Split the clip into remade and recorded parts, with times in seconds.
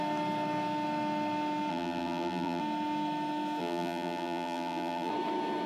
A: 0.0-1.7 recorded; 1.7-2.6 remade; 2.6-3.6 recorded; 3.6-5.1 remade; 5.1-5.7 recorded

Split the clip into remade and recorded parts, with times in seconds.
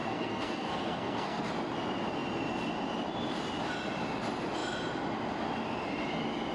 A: 0.0-1.5 remade; 1.5-6.5 recorded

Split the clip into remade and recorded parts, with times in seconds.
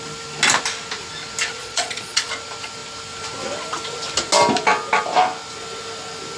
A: 0.0-1.6 recorded; 1.6-2.3 remade; 2.3-6.4 recorded